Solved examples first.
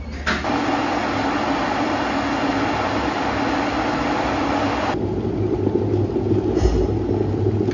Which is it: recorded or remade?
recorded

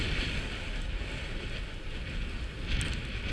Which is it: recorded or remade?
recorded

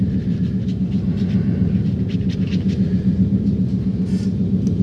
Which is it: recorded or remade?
remade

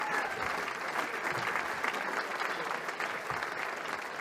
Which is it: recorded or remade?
recorded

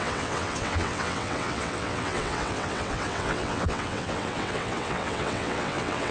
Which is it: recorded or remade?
remade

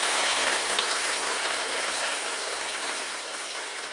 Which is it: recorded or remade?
remade